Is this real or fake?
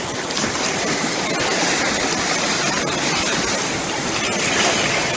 real